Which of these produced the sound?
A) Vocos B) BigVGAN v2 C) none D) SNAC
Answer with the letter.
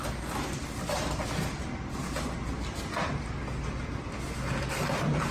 C